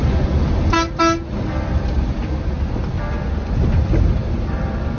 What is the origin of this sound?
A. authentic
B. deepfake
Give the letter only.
A